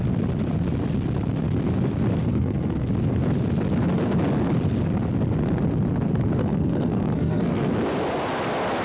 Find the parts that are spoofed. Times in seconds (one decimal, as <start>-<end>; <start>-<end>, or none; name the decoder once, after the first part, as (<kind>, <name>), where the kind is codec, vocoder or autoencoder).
2.3-2.9 (codec, SNAC); 6.4-7.7

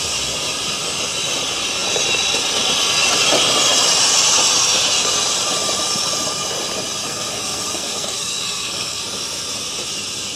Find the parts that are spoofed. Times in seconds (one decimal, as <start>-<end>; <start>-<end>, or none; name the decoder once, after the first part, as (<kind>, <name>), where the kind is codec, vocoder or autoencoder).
7.0-9.0 (codec, SNAC)

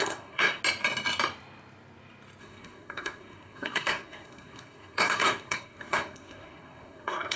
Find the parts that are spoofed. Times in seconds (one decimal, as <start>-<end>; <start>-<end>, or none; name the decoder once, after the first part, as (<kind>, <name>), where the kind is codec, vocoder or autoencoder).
0.0-0.6 (codec, SNAC); 2.4-7.4

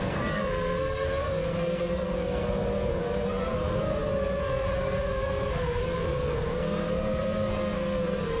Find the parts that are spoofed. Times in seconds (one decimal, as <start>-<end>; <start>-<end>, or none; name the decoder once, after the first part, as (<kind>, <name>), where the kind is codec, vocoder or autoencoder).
0.0-8.4 (codec, SNAC)